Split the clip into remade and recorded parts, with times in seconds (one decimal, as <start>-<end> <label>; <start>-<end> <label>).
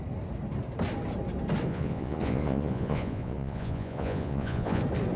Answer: 0.0-1.7 recorded; 1.7-4.8 remade; 4.8-5.2 recorded